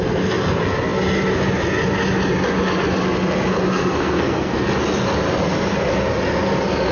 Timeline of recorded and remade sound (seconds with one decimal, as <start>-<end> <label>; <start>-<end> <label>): 0.0-3.7 recorded; 3.7-4.7 remade; 4.7-6.9 recorded